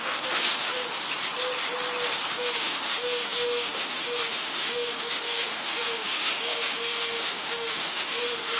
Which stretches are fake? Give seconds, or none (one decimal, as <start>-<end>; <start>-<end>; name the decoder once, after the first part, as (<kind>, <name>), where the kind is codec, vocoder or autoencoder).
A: 0.0-0.8 (autoencoder, DAC-VAE); 2.3-8.6

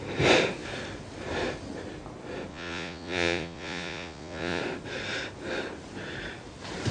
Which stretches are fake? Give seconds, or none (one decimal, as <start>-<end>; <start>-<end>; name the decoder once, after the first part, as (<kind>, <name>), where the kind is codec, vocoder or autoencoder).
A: 2.5-4.6 (vocoder, Vocos)

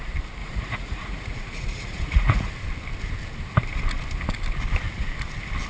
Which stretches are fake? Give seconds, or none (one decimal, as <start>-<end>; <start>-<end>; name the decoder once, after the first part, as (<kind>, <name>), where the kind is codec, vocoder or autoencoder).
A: 0.4-2.5 (vocoder, Vocos)

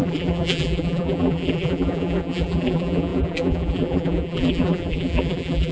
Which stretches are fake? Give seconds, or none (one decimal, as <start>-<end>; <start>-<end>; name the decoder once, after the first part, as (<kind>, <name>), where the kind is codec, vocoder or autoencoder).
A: 0.0-5.7 (vocoder, BigVGAN v2)